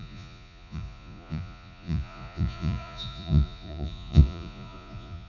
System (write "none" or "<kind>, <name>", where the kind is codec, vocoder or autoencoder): vocoder, Vocos